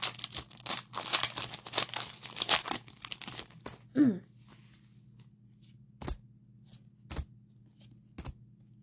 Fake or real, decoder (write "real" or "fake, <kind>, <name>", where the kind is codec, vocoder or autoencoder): real